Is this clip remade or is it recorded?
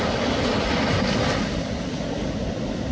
recorded